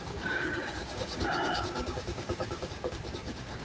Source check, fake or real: fake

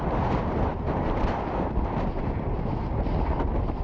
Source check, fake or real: real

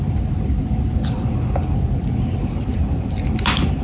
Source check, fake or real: real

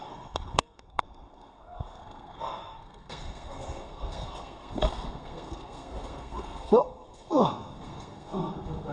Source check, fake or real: fake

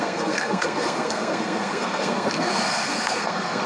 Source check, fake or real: fake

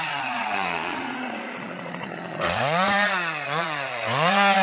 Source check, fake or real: fake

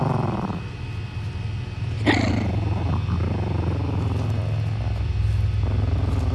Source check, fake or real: real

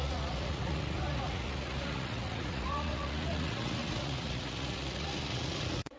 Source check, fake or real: fake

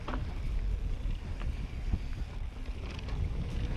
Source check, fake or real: real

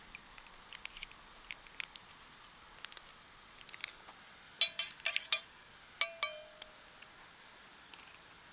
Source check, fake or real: real